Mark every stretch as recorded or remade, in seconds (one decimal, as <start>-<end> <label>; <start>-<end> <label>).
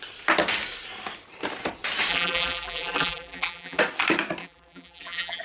0.0-2.1 recorded; 2.1-3.8 remade; 3.8-4.4 recorded; 4.4-5.4 remade